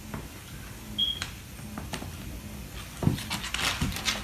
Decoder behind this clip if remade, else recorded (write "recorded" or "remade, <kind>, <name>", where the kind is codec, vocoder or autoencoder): recorded